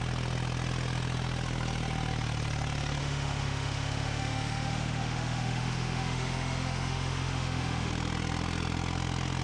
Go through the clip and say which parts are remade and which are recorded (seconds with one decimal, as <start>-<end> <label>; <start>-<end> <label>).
0.0-3.0 recorded; 3.0-7.9 remade; 7.9-9.4 recorded